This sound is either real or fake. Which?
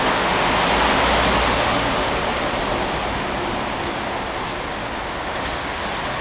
real